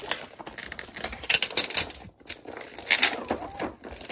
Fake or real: real